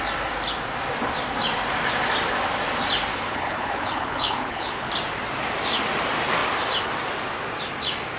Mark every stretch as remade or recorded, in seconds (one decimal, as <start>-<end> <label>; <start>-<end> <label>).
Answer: 0.0-3.1 recorded; 3.1-4.9 remade; 4.9-8.2 recorded